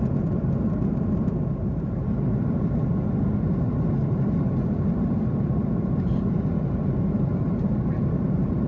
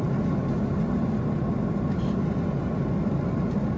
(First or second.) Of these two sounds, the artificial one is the first